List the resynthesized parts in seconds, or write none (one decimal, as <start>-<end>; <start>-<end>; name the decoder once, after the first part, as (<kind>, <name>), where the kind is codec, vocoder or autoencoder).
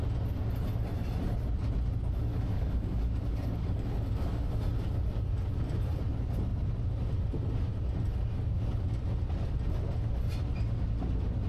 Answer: 2.3-4.5 (codec, DAC)